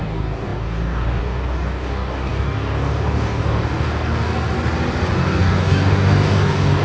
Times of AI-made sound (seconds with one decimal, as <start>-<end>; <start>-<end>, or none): 0.0-4.3; 5.1-6.8